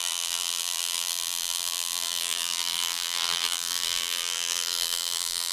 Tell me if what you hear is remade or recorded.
remade